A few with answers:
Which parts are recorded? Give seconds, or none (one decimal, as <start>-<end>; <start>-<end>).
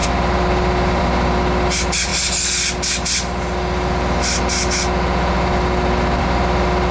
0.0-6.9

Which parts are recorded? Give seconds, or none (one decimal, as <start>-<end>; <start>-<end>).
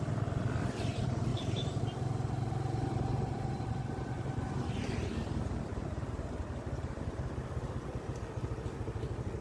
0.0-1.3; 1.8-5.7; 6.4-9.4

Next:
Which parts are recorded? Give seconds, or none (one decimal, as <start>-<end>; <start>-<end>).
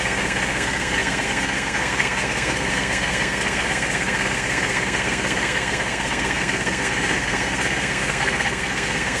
none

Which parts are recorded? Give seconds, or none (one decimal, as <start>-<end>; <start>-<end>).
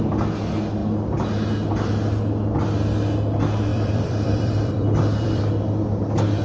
0.0-3.7; 5.4-6.4